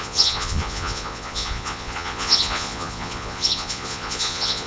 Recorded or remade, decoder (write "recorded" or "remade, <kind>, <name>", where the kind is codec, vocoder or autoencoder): remade, vocoder, Vocos